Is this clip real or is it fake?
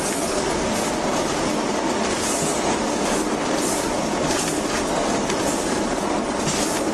real